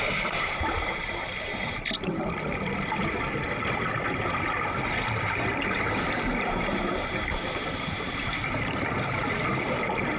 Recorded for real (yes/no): no